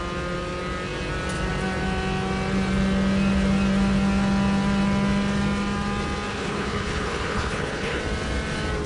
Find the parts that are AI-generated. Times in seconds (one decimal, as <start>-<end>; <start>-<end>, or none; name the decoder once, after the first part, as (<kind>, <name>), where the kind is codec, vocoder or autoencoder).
6.3-8.0 (codec, HILCodec)

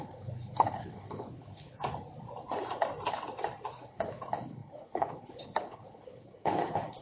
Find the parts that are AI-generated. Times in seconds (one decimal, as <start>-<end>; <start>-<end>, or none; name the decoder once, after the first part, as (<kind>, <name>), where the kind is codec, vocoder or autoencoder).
0.0-1.8 (codec, HILCodec); 3.7-7.0